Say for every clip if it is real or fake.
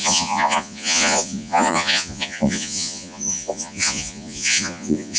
fake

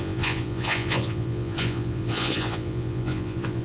fake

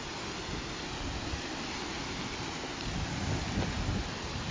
real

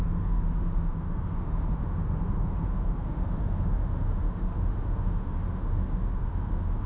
fake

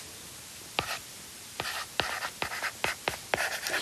real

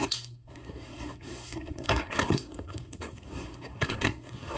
fake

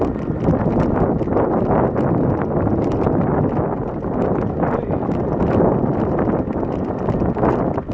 real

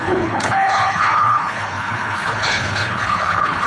fake